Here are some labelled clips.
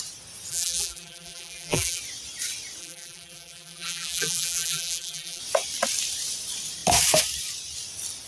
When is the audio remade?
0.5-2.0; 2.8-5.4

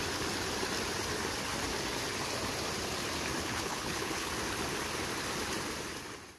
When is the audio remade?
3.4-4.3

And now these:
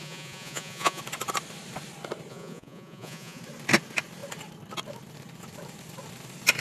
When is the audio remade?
0.0-1.0; 2.3-3.4